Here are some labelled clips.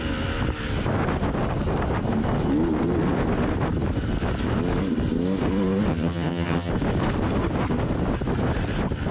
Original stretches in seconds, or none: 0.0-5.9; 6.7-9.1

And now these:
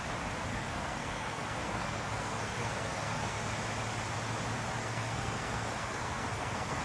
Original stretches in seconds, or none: 0.0-0.5; 3.4-4.8

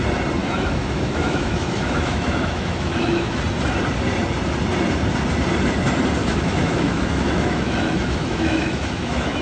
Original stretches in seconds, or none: 0.0-0.4; 3.4-6.2

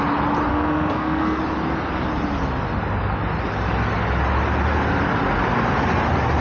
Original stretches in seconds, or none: 0.0-0.5; 1.4-6.4

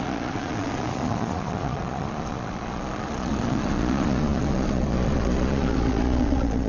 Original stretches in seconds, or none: none